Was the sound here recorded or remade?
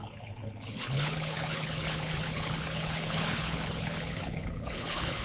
remade